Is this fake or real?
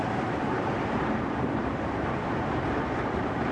fake